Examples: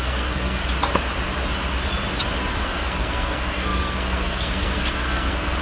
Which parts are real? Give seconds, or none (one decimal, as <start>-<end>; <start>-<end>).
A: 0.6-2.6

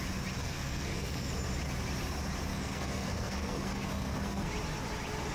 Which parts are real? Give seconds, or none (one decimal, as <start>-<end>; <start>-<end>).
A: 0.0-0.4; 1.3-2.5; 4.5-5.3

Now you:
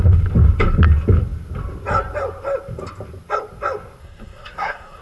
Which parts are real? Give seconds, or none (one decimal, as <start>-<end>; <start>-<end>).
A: 0.0-4.0

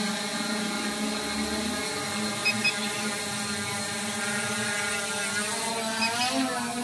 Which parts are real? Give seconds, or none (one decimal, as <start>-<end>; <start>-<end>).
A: 0.0-6.8

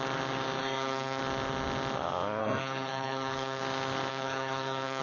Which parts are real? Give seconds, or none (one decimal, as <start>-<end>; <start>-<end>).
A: 0.0-0.6; 1.2-2.4; 3.6-4.1